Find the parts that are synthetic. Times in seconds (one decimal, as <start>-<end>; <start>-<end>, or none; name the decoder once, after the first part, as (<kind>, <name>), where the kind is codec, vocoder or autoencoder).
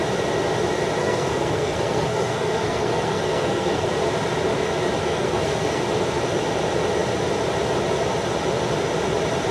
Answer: 1.0-3.9 (codec, SNAC); 5.0-5.8